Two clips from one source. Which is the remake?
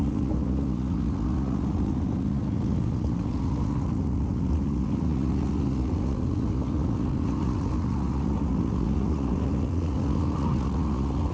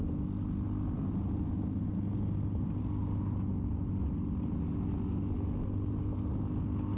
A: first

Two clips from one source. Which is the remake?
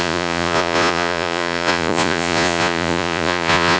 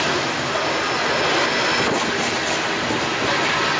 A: first